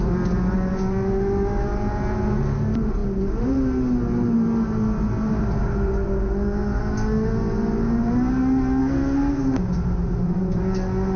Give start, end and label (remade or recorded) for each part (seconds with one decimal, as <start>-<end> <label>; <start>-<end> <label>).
0.0-8.8 recorded; 8.8-9.6 remade; 9.6-11.2 recorded